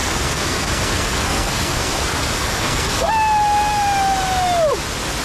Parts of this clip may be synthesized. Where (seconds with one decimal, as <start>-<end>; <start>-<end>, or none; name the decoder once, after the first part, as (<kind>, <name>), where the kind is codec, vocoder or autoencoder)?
0.0-3.1 (codec, SNAC)